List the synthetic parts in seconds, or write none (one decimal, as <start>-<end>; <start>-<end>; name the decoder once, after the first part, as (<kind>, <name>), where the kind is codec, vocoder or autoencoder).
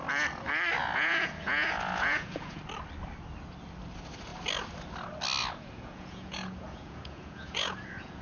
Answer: 0.8-2.6 (vocoder, Vocos); 5.4-8.2